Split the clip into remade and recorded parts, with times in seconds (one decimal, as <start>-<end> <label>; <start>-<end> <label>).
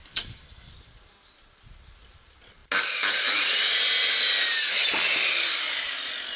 0.0-0.7 remade; 0.7-6.4 recorded